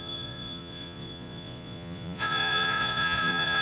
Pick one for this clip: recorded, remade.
remade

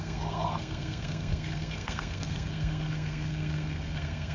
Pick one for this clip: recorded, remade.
remade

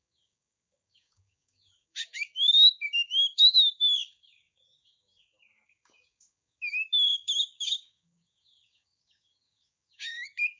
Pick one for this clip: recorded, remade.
remade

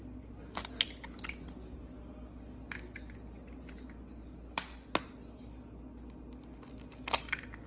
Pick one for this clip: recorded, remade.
recorded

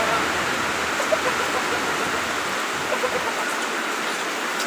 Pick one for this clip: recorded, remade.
recorded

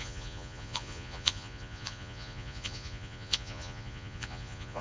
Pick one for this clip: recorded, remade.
remade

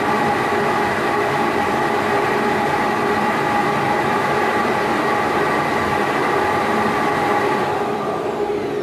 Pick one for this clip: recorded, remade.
remade